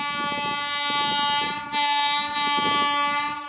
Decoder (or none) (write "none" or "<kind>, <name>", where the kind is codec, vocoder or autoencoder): none